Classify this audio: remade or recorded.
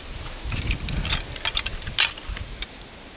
recorded